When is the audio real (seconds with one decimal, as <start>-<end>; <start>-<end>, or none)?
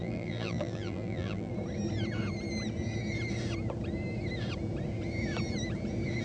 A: 1.5-6.2